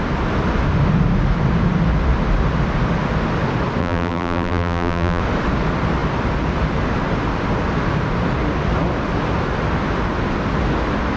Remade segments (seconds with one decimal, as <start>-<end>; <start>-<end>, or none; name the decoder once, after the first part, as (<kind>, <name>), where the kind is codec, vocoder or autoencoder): 3.8-5.2 (vocoder, BigVGAN v2)